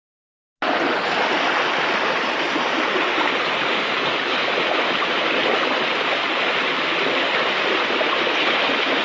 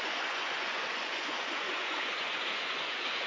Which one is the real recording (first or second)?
first